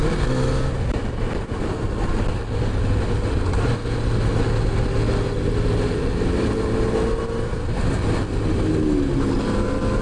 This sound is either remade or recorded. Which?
recorded